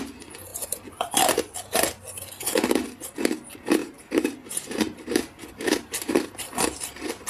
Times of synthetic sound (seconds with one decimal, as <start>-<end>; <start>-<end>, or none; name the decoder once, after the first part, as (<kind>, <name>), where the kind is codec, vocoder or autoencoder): 3.8-6.2 (vocoder, BigVGAN v2)